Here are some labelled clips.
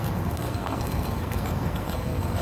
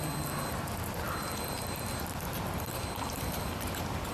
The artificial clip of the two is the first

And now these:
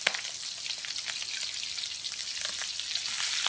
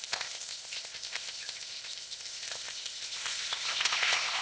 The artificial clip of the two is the second